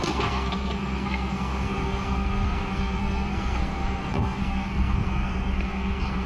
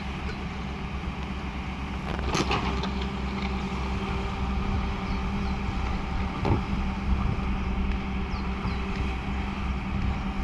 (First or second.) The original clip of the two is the second